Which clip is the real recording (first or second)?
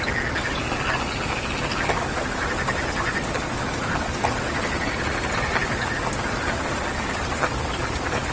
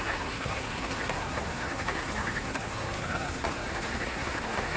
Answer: first